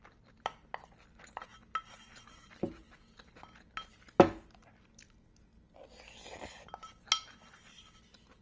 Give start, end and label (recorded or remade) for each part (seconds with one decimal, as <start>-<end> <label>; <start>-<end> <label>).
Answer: 0.0-8.4 recorded